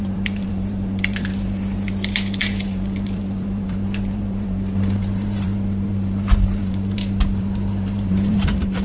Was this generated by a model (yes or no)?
yes